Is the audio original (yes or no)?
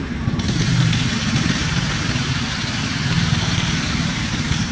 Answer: no